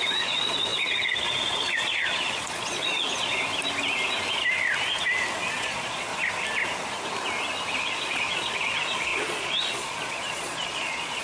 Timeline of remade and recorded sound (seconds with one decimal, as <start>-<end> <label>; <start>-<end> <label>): 0.0-3.4 remade; 3.4-5.5 recorded; 5.5-6.1 remade; 6.1-7.8 recorded; 7.8-11.2 remade